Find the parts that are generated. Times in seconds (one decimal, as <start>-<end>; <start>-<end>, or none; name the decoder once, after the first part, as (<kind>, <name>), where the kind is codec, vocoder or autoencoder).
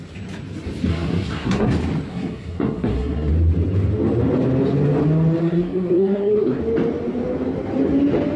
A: 0.9-1.7 (codec, SNAC); 2.1-3.3; 5.4-6.6